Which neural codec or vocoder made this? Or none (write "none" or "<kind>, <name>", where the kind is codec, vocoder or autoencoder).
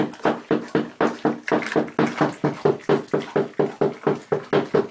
none